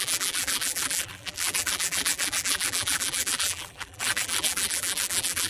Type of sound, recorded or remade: remade